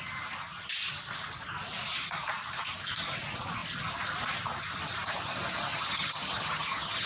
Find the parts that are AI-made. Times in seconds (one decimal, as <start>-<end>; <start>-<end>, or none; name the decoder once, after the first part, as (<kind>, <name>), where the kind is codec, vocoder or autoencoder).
5.7-7.1 (vocoder, HiFi-GAN)